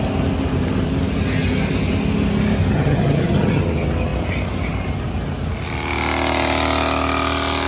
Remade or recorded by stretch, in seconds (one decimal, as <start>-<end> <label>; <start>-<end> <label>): 0.0-2.7 recorded; 2.7-3.6 remade; 3.6-7.7 recorded